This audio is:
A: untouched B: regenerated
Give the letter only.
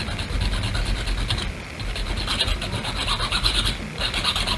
A